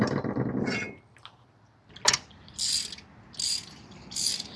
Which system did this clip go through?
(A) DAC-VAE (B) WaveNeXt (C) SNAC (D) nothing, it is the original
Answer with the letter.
D